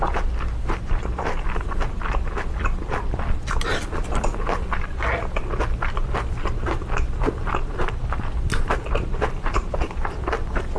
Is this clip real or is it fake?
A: real